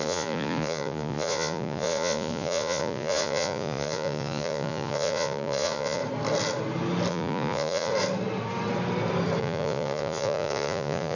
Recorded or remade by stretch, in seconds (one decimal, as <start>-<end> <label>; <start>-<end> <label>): 0.0-6.0 remade; 6.0-7.1 recorded; 7.1-7.9 remade; 7.9-9.4 recorded; 9.4-11.2 remade